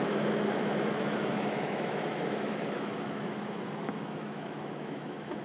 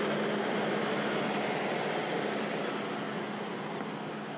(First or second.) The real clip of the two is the second